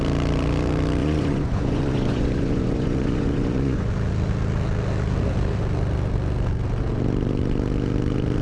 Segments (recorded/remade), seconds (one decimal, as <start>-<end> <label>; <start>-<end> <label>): 0.0-1.0 recorded; 1.0-3.9 remade; 3.9-8.4 recorded